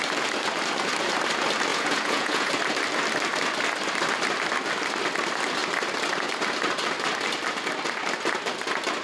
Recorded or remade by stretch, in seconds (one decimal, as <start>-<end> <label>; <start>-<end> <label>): 0.0-1.7 recorded; 1.7-2.5 remade; 2.5-9.0 recorded